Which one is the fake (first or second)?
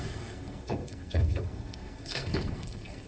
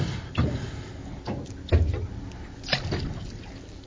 first